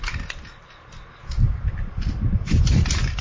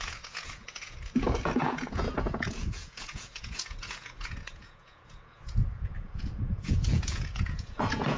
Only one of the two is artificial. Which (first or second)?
second